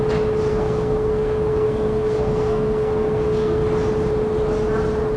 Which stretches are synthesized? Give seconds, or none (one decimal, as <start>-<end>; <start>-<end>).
0.5-3.6